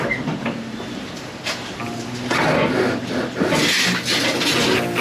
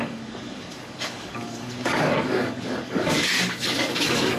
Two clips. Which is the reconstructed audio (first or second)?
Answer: second